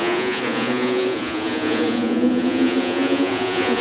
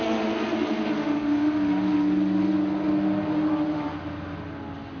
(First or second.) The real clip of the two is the second